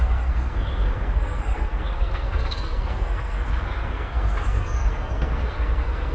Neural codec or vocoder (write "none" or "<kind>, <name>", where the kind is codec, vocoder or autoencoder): codec, SNAC